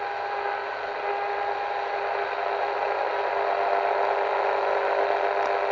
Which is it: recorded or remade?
recorded